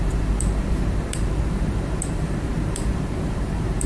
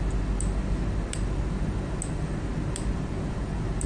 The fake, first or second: first